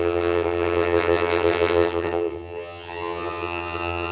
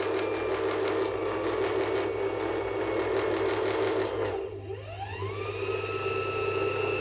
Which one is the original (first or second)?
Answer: second